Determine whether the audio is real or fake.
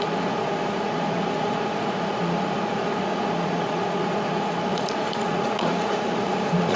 fake